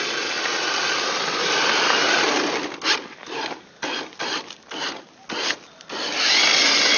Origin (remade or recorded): recorded